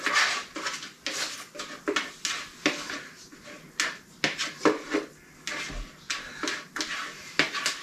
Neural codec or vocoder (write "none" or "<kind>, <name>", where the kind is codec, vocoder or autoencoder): none